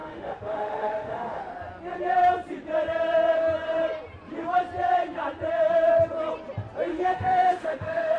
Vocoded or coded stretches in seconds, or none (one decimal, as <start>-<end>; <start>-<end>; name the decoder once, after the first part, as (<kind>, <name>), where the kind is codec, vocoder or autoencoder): 0.0-1.4 (autoencoder, DAC-VAE); 6.9-8.2